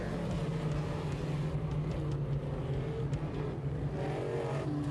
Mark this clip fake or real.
real